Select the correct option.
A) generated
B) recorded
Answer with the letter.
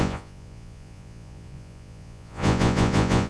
A